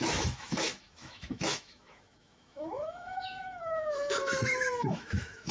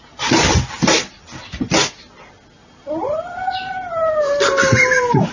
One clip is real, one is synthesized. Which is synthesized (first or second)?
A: first